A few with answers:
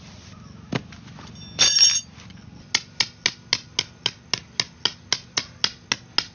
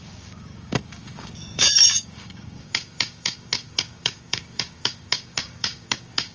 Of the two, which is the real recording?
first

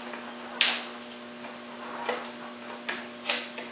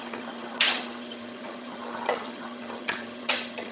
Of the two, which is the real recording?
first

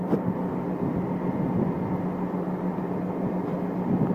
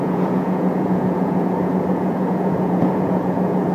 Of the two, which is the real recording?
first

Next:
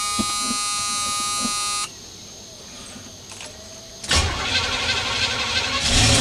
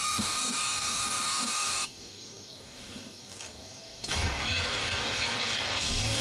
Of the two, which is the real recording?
first